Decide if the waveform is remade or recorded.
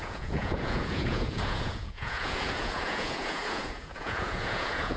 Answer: remade